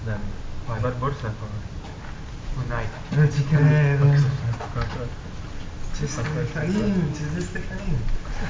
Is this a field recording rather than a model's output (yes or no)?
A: yes